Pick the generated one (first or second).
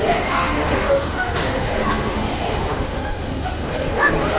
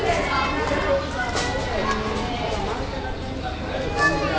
first